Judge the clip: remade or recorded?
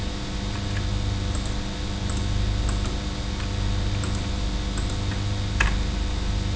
recorded